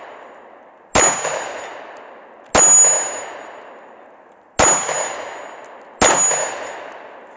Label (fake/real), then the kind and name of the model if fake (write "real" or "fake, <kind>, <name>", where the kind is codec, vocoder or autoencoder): real